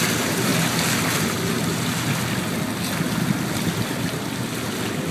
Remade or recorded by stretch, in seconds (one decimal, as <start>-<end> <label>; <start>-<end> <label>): 0.0-0.5 remade; 0.5-3.6 recorded; 3.6-5.1 remade